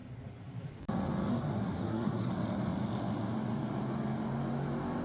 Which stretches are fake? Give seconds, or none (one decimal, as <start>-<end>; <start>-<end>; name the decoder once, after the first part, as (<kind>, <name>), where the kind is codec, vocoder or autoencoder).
1.3-2.3 (codec, SNAC)